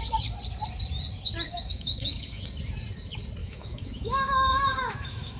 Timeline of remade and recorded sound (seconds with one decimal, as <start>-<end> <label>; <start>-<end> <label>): 0.0-1.5 recorded; 1.5-2.4 remade; 2.4-3.4 recorded; 3.4-5.4 remade